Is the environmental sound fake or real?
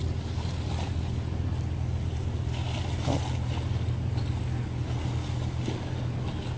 real